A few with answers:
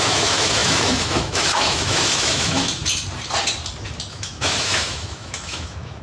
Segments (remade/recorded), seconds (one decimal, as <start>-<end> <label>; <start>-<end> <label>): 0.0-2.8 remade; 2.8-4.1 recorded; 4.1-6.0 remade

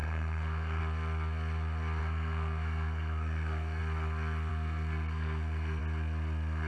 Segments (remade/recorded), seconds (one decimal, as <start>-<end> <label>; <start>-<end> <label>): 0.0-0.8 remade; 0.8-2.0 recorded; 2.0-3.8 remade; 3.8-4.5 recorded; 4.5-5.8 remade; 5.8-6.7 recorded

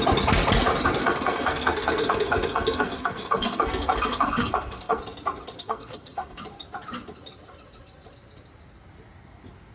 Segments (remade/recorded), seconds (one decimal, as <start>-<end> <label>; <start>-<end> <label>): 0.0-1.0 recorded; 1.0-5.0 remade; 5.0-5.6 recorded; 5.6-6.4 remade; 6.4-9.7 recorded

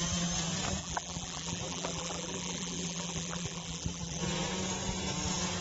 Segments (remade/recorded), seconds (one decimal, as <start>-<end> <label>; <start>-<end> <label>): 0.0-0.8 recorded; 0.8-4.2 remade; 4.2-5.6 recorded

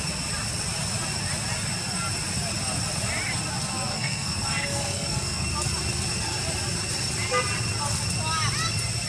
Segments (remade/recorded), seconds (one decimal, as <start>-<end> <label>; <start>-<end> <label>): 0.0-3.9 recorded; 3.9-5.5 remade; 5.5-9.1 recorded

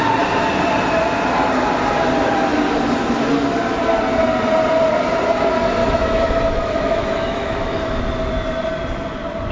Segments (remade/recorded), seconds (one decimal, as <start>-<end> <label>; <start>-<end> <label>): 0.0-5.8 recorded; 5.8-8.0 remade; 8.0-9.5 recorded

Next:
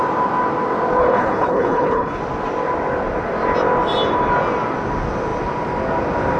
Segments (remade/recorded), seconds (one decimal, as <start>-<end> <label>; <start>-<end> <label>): 0.0-1.0 recorded; 1.0-2.2 remade; 2.2-6.4 recorded